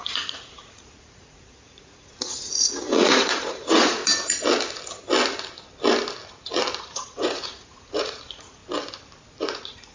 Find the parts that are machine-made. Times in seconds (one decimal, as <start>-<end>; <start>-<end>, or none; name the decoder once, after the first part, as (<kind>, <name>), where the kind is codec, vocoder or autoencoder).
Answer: 0.0-4.0 (vocoder, Vocos); 6.8-8.6; 9.4-9.9